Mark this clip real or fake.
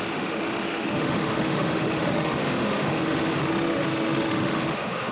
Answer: fake